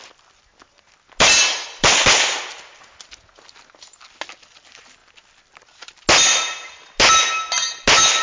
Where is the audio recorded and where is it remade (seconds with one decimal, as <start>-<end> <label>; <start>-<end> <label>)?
0.0-8.2 recorded